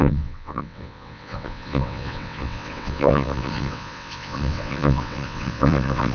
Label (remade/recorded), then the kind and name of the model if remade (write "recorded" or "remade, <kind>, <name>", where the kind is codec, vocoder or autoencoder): remade, vocoder, WaveNeXt